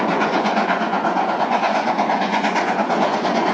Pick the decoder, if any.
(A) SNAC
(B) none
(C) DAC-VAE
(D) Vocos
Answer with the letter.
D